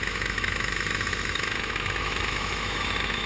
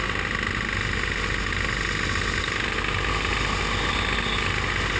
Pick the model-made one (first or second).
first